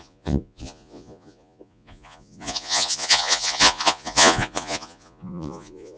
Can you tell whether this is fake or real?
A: fake